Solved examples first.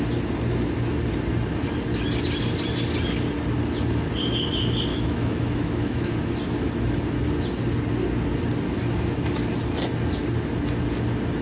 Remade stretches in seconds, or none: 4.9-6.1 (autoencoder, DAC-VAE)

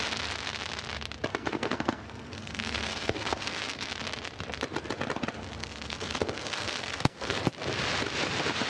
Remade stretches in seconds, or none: 1.3-3.9 (codec, SNAC); 5.6-7.4

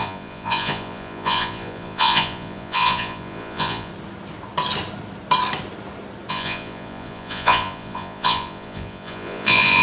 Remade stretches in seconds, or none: 0.0-3.9 (vocoder, Vocos); 6.3-9.8

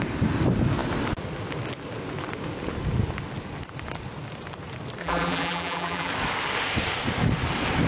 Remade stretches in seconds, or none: 5.0-6.1 (vocoder, BigVGAN v2)

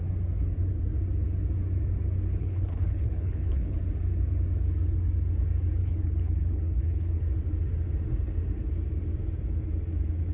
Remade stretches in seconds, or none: 2.4-3.8 (codec, HILCodec); 5.8-7.2

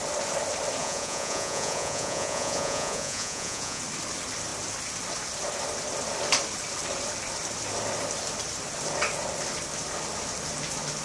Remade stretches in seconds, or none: 0.8-3.8 (vocoder, Vocos)